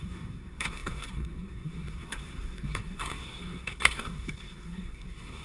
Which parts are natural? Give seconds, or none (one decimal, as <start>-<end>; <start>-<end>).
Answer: none